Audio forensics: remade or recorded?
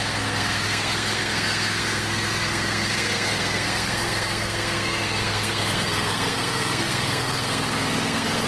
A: remade